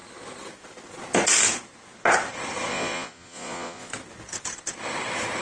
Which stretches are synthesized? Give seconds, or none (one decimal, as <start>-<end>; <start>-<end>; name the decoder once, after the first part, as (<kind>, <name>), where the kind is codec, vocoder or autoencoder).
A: 2.7-3.9 (vocoder, Vocos)